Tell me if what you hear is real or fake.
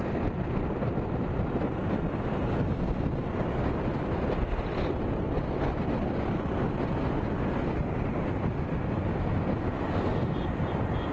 real